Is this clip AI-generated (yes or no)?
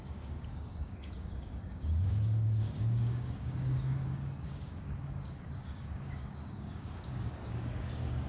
yes